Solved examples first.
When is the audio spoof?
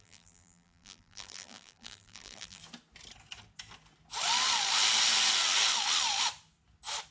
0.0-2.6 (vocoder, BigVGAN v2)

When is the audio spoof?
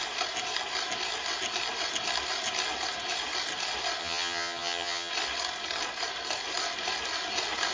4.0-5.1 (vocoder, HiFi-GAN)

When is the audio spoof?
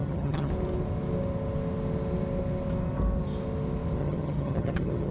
0.0-0.5 (vocoder, HiFi-GAN); 4.0-5.1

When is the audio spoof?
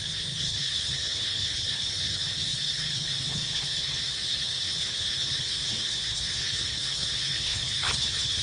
0.0-8.4 (codec, HILCodec)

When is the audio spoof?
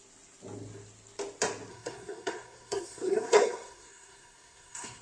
1.7-5.0 (codec, SNAC)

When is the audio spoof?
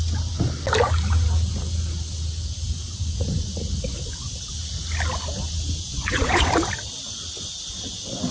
5.9-6.5 (vocoder, Vocos)